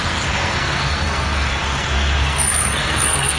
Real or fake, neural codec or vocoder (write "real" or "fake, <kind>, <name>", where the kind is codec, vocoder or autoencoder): fake, codec, SNAC